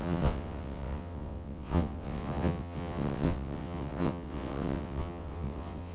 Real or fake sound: fake